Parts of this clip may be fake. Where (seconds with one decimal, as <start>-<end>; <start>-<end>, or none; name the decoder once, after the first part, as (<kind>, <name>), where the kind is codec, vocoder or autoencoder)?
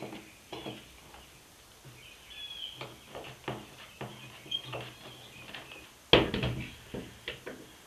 none